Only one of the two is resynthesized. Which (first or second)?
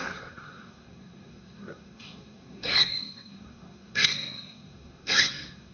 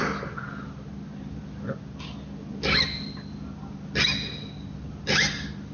first